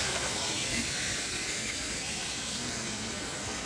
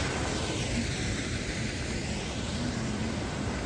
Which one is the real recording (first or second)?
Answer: second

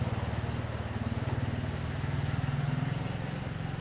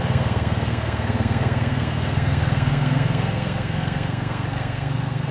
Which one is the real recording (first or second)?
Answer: first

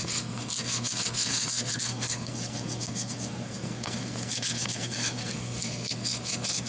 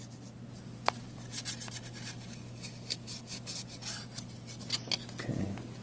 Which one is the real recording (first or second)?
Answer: second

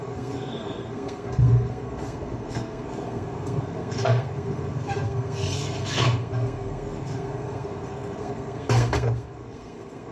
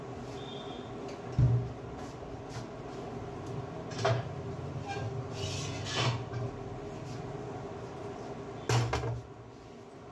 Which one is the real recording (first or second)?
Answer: second